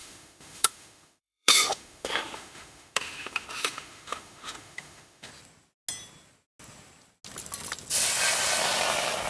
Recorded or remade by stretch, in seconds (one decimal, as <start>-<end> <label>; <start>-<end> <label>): 0.0-5.3 remade; 5.3-9.3 recorded